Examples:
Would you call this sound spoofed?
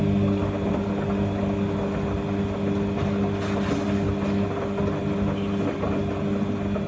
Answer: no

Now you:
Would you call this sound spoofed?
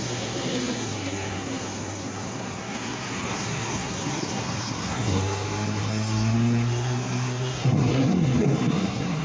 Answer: yes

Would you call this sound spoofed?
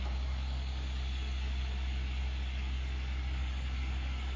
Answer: yes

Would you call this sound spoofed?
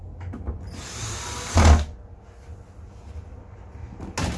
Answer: no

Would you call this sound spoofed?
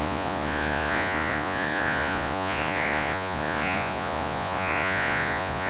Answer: yes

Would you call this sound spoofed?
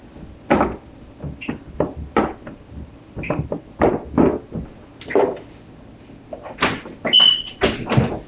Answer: no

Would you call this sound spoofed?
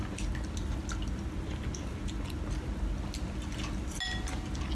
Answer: no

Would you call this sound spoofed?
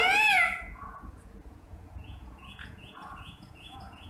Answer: yes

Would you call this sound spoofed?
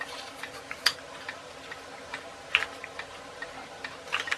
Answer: no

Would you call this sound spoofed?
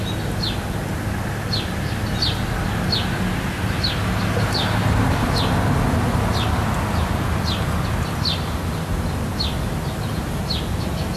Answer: no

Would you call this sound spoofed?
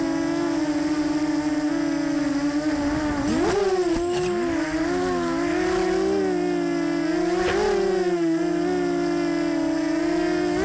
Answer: no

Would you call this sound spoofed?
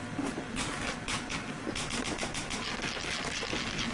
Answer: yes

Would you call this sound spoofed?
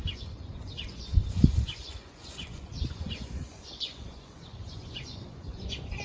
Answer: yes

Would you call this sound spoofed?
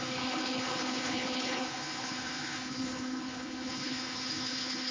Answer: yes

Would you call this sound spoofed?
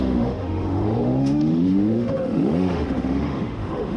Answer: yes